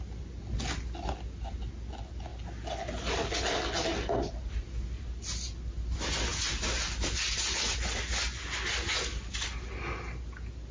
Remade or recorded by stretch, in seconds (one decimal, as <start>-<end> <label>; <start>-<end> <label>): 0.0-10.7 recorded